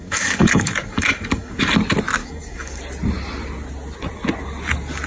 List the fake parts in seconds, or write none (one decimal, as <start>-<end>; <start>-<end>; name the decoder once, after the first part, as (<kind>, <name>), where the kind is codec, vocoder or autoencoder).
0.0-1.7 (codec, DAC); 2.2-2.8